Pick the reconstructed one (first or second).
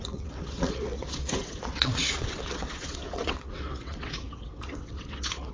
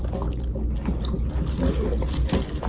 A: first